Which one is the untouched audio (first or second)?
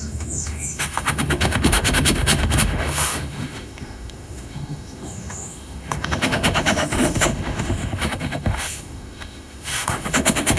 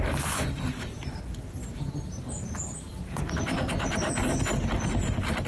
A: second